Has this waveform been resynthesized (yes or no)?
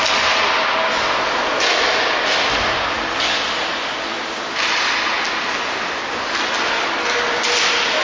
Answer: no